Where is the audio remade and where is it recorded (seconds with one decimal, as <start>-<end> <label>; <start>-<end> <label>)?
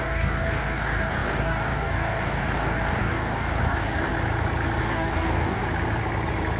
0.0-4.1 remade; 4.1-4.8 recorded; 4.8-5.6 remade; 5.6-6.6 recorded